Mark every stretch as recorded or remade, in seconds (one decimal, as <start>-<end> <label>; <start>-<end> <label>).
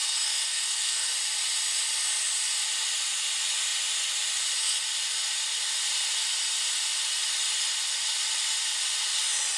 0.0-1.1 remade; 1.1-9.6 recorded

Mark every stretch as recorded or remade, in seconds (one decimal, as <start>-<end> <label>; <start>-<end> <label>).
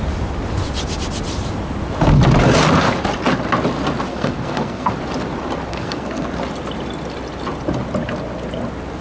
0.0-4.1 recorded; 4.1-4.9 remade; 4.9-5.7 recorded; 5.7-6.3 remade; 6.3-9.0 recorded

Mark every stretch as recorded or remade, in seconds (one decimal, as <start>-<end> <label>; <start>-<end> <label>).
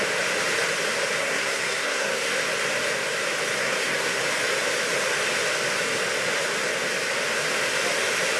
0.0-1.2 recorded; 1.2-2.3 remade; 2.3-3.6 recorded; 3.6-4.2 remade; 4.2-8.4 recorded